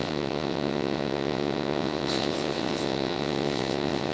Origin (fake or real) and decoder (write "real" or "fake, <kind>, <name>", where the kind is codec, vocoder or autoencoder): fake, vocoder, WaveNeXt